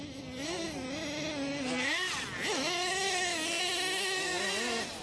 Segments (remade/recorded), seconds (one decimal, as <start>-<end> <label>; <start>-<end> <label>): 0.0-5.0 recorded